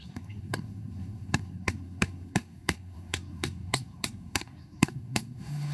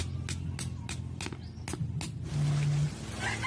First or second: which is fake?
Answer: first